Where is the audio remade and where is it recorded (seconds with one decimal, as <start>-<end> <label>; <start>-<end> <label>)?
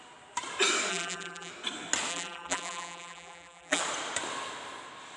0.0-0.9 recorded; 0.9-1.5 remade; 1.5-2.1 recorded; 2.1-3.8 remade; 3.8-5.2 recorded